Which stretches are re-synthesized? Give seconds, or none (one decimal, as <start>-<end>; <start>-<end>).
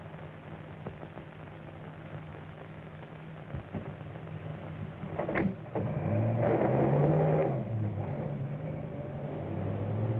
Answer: 2.3-3.3